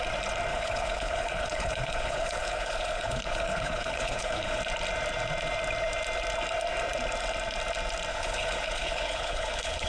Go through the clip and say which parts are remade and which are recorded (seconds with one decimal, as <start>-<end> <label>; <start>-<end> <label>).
0.0-0.5 recorded; 0.5-4.6 remade; 4.6-8.1 recorded; 8.1-9.9 remade